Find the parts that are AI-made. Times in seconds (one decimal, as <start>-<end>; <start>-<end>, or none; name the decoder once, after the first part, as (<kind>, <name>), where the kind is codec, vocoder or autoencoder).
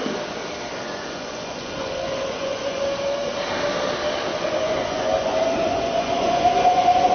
0.9-2.8 (vocoder, Vocos); 4.3-7.1